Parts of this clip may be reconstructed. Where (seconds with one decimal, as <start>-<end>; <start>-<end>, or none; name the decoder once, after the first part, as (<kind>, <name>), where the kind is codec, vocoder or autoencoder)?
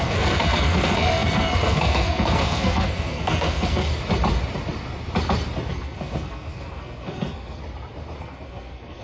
0.0-3.9 (codec, SNAC); 5.7-7.6; 8.2-9.0